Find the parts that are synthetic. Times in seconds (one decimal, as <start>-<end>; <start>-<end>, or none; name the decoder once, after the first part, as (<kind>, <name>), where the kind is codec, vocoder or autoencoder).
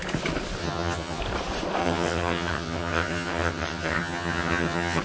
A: 0.6-1.2 (vocoder, HiFi-GAN); 1.8-5.0